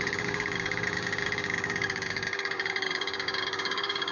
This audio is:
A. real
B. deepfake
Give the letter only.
B